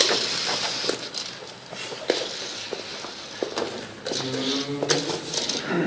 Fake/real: real